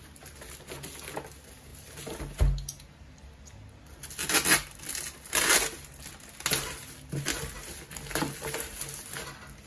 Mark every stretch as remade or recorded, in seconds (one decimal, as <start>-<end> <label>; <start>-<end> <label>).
0.0-9.7 recorded